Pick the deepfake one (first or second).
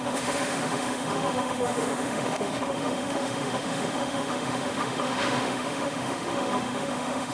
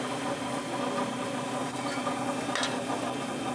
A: first